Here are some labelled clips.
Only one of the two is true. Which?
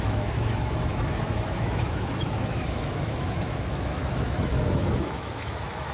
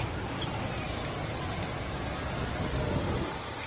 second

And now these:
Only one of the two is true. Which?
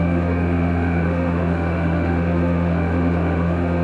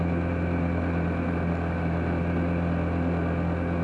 second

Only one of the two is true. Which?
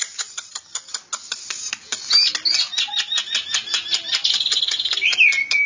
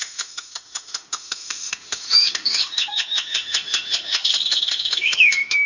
first